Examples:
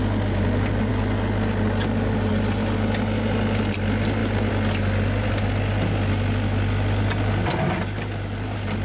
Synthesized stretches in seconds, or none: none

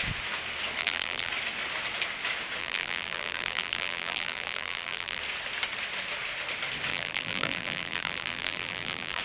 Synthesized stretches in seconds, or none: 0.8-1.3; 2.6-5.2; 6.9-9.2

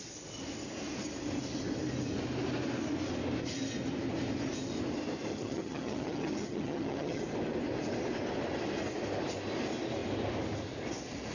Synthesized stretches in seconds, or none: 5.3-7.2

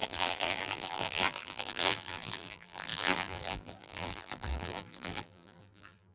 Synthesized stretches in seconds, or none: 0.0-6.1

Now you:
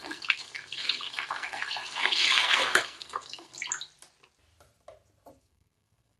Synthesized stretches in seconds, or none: 0.0-3.5; 5.4-6.2